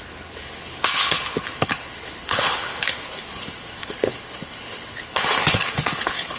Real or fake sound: fake